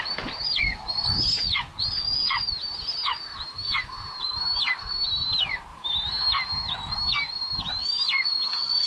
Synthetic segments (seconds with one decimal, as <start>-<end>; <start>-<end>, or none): 2.5-3.1; 5.7-6.6